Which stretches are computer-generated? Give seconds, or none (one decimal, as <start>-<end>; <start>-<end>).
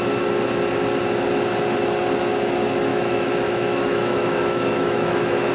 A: 2.9-5.5